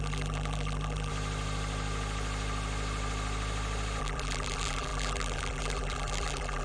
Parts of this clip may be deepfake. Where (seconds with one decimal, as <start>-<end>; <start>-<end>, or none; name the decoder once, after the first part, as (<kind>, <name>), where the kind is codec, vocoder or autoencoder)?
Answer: 0.0-1.1 (vocoder, BigVGAN v2); 4.0-6.6